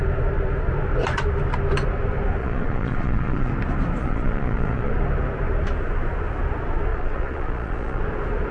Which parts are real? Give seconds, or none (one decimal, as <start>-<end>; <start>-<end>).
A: 0.0-2.4; 3.5-4.0; 4.9-6.9; 8.0-8.5